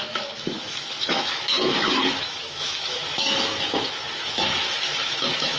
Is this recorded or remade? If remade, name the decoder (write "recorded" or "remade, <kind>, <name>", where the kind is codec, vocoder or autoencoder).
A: remade, autoencoder, DAC-VAE